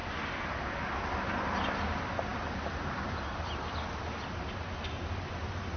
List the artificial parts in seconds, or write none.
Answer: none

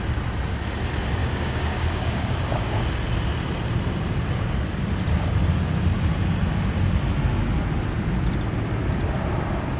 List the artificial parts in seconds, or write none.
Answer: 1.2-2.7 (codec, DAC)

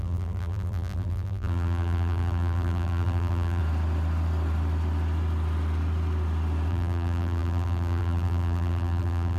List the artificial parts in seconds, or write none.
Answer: 0.0-3.6 (vocoder, BigVGAN v2); 6.7-9.4

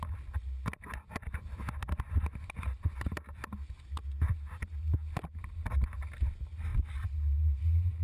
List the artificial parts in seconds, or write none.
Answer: none